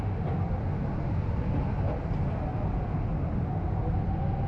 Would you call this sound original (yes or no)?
yes